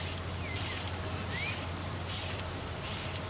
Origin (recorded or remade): recorded